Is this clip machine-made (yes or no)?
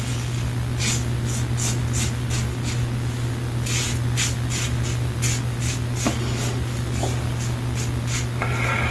no